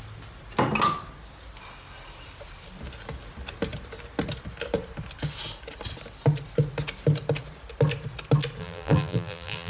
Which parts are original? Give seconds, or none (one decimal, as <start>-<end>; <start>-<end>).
0.0-8.6